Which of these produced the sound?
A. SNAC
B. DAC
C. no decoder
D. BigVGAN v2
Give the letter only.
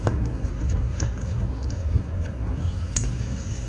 A